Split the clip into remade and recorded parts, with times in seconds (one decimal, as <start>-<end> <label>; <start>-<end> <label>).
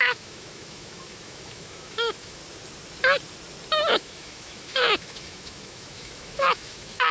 0.0-2.4 remade; 2.4-3.9 recorded; 3.9-7.1 remade